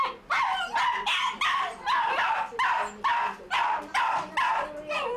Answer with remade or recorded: recorded